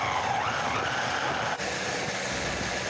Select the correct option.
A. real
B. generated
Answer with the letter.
A